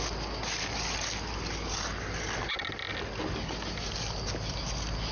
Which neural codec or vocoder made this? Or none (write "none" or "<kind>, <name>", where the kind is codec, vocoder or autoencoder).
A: none